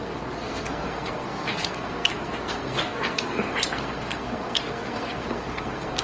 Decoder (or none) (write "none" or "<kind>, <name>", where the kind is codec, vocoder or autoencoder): codec, SNAC